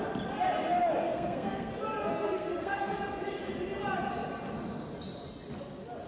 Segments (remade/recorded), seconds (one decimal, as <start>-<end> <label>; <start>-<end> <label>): 0.0-1.0 recorded; 1.0-1.7 remade; 1.7-2.1 recorded; 2.1-3.0 remade; 3.0-6.1 recorded